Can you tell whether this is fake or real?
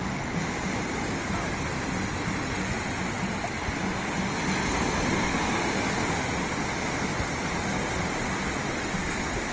real